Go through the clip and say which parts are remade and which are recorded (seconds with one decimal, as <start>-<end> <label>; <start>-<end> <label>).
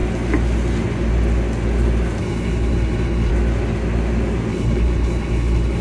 0.0-2.2 recorded; 2.2-3.3 remade; 3.3-4.5 recorded; 4.5-5.8 remade